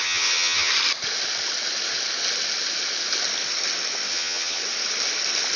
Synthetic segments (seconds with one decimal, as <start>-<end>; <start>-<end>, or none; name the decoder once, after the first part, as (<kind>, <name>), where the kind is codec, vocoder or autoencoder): 0.0-0.7 (vocoder, HiFi-GAN); 4.1-4.6